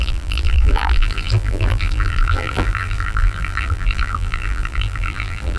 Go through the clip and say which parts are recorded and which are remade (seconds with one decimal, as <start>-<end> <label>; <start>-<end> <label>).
0.0-5.6 remade